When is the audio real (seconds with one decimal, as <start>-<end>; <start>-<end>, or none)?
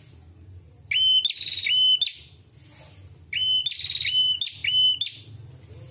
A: 0.0-5.9